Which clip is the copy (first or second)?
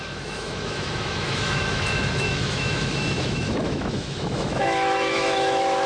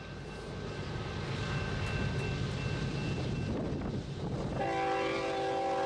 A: first